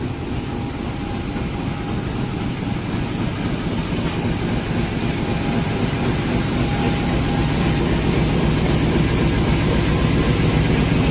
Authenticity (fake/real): real